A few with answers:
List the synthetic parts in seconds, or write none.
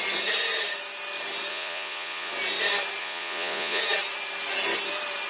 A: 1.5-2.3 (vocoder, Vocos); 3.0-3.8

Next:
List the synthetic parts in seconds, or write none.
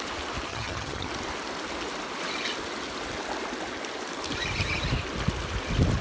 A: 0.5-1.1 (vocoder, HiFi-GAN)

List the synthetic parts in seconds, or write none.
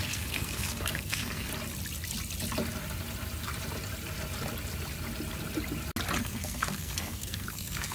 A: 0.0-1.5 (codec, SNAC); 6.2-7.9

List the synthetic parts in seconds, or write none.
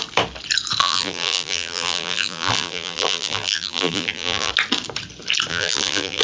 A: 0.8-4.5 (vocoder, BigVGAN v2); 5.5-6.2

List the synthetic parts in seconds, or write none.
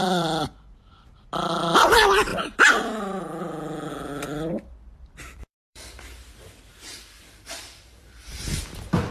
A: 0.0-2.3 (vocoder, BigVGAN v2); 3.9-9.1